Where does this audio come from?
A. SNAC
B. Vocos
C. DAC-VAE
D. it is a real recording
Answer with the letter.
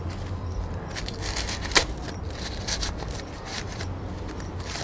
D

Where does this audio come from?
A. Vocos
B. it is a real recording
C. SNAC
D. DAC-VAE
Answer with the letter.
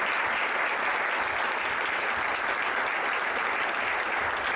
B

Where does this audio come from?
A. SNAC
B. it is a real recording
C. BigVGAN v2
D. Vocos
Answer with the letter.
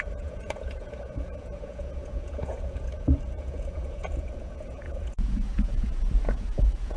D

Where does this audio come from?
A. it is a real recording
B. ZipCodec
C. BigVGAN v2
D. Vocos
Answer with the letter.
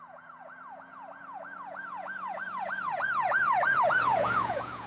D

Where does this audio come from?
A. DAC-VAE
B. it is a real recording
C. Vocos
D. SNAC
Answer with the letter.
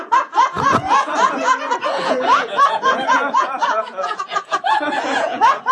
C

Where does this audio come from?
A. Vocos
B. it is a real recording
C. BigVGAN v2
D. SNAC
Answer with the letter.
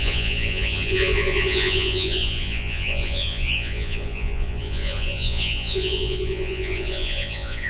A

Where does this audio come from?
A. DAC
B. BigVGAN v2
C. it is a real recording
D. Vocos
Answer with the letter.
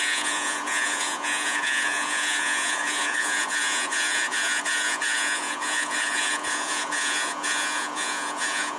D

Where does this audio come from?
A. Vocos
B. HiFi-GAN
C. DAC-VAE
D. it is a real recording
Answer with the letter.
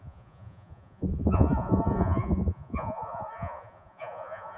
A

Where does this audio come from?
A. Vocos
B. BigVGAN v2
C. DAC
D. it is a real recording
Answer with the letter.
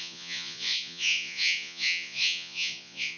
A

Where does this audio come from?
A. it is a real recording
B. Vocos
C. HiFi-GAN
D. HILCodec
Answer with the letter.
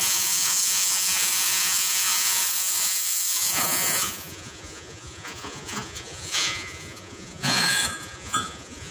B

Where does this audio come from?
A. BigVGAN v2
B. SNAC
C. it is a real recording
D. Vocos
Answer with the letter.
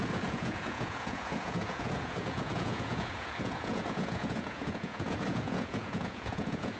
D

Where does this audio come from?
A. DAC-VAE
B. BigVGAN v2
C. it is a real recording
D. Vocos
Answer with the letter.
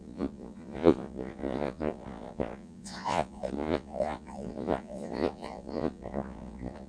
D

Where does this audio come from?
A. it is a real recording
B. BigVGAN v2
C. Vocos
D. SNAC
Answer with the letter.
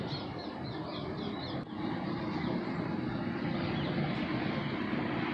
A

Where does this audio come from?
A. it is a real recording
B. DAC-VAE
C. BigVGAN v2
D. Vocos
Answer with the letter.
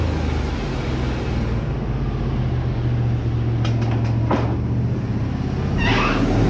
A